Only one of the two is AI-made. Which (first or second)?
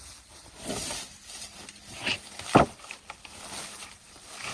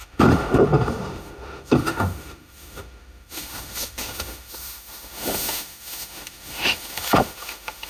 second